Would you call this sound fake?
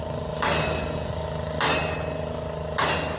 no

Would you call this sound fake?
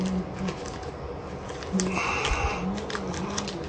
no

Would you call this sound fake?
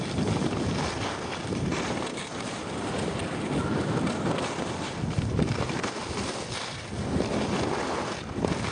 no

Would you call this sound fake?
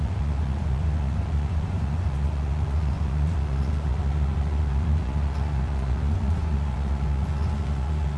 yes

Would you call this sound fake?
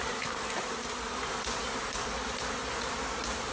no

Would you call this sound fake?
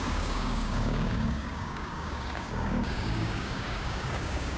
yes